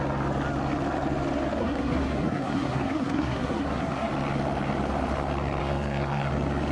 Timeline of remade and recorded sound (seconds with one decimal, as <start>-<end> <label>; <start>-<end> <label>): 0.0-1.6 recorded; 1.6-4.1 remade; 4.1-5.6 recorded; 5.6-6.3 remade; 6.3-6.7 recorded